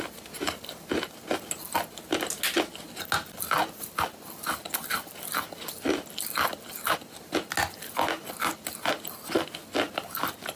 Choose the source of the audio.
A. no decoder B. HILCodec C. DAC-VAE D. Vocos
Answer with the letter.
A